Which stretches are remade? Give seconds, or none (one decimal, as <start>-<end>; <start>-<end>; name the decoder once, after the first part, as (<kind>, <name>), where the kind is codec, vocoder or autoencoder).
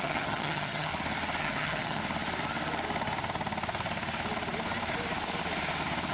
0.0-0.9 (vocoder, HiFi-GAN); 1.4-2.0